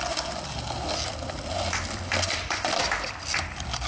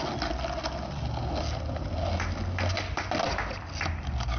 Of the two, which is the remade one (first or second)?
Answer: first